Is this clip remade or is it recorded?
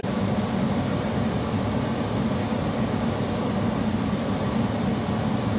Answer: recorded